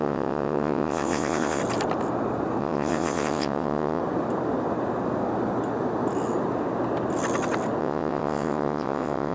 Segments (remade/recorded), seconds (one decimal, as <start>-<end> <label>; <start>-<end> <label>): 0.0-1.6 remade; 1.6-2.6 recorded; 2.6-4.0 remade; 4.0-7.8 recorded; 7.8-9.3 remade